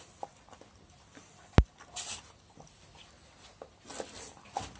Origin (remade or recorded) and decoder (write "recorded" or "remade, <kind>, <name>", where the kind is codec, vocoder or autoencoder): recorded